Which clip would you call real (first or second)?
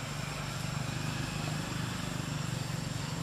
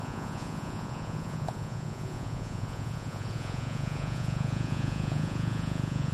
first